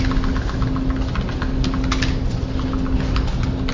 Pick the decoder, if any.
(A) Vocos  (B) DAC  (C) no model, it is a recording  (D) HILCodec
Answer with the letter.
C